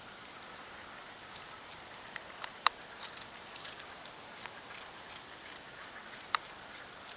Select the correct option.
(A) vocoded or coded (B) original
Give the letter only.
B